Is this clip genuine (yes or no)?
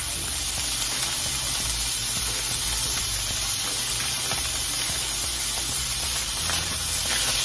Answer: yes